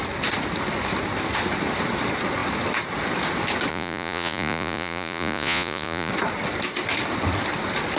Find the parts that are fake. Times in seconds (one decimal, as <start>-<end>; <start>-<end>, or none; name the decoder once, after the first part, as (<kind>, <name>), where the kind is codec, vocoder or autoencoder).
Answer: 3.7-6.1 (vocoder, Vocos)